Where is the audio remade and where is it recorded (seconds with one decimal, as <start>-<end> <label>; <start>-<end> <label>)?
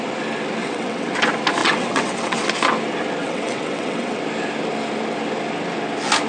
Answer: 0.0-0.6 recorded; 0.6-1.1 remade; 1.1-1.6 recorded; 1.6-2.5 remade; 2.5-3.2 recorded; 3.2-4.2 remade; 4.2-6.3 recorded